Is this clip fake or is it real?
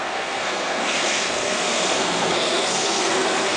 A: fake